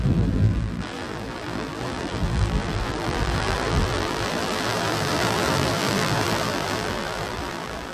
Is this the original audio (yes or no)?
no